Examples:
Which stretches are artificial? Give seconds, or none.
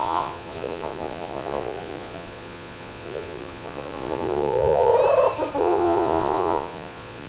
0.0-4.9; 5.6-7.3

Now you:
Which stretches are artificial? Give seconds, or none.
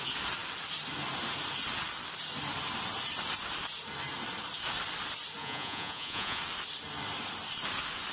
5.4-6.4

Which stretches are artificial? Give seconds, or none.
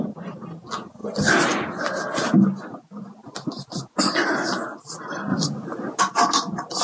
none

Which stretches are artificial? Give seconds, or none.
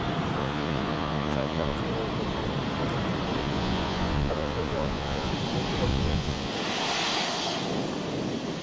0.4-1.8; 3.4-5.3; 5.9-6.5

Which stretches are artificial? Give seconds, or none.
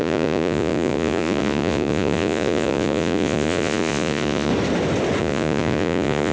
0.0-4.5; 5.2-6.3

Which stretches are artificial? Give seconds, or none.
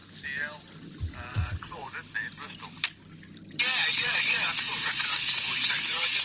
1.3-1.9; 3.9-6.2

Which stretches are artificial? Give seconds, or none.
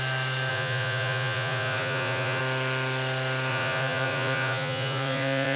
0.5-2.4; 3.5-5.6